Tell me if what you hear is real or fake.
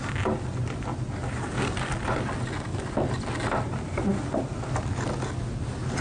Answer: real